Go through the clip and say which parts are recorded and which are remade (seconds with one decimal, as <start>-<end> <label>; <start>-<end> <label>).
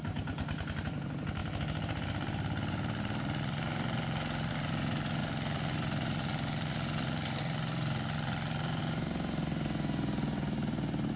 0.0-1.4 recorded; 1.4-4.5 remade; 4.5-5.2 recorded; 5.2-8.8 remade; 8.8-11.2 recorded